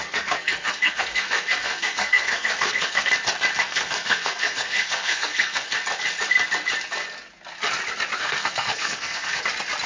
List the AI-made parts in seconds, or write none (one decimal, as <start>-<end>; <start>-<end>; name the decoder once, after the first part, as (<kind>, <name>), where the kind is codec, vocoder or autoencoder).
0.0-3.1 (codec, SNAC); 3.6-5.7; 8.2-9.4